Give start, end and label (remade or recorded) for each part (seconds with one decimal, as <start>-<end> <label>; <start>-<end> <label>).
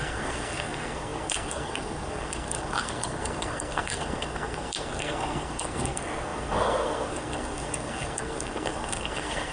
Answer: 0.0-9.5 remade